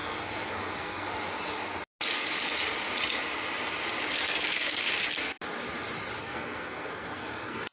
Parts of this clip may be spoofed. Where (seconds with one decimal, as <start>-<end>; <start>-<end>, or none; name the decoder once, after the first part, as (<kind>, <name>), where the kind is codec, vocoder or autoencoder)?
0.0-1.1 (codec, SNAC); 4.3-4.9; 6.2-7.7